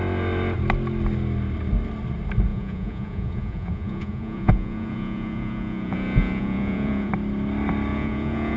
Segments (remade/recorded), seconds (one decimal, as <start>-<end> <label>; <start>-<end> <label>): 0.0-2.5 recorded; 2.5-7.1 remade; 7.1-7.9 recorded; 7.9-8.6 remade